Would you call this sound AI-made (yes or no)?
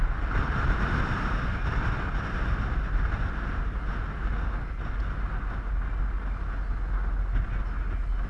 no